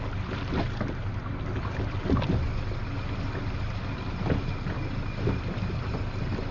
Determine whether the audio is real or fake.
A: real